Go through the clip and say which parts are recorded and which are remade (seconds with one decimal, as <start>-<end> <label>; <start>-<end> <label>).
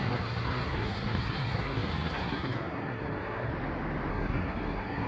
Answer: 0.0-3.5 remade; 3.5-4.1 recorded; 4.1-5.1 remade